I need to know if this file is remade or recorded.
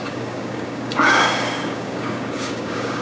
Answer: remade